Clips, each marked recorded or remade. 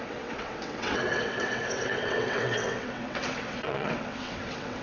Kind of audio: remade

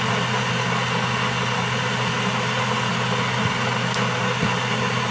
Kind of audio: recorded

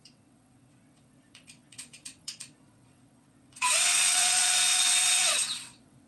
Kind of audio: remade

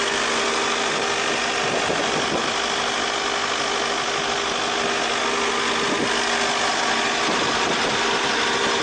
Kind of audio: recorded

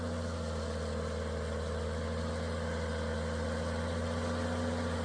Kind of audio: recorded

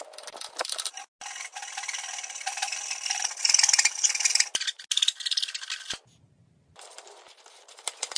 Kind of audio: recorded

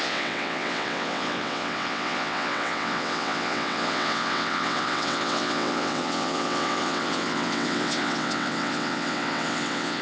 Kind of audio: remade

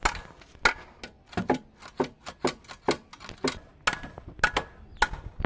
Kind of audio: recorded